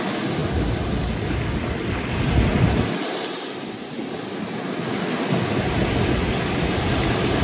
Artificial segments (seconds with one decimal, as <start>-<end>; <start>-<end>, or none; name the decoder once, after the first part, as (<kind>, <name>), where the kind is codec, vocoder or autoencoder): none